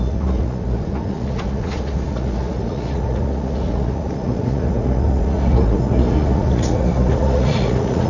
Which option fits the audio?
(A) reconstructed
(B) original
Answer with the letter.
A